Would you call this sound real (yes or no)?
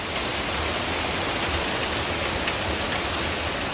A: yes